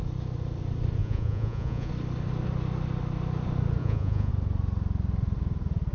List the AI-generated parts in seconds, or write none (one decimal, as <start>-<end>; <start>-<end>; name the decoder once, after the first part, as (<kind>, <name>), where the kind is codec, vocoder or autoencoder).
1.0-1.9 (vocoder, Vocos); 3.8-4.3